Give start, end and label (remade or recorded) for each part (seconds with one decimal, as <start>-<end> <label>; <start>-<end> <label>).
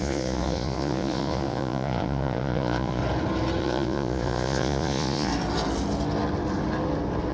0.0-3.0 remade; 3.0-3.6 recorded; 3.6-5.3 remade; 5.3-7.3 recorded